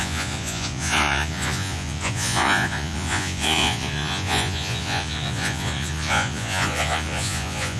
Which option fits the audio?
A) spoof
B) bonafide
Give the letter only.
A